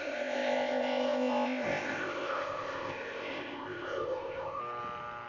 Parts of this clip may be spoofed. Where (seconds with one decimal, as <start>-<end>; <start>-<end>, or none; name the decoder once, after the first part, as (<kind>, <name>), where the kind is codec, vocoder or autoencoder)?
0.0-4.6 (codec, ZipCodec)